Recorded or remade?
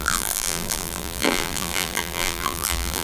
remade